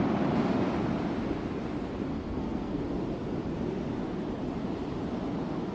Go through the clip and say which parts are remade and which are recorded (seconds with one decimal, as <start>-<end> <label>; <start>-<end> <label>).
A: 0.0-2.1 recorded; 2.1-2.8 remade; 2.8-5.7 recorded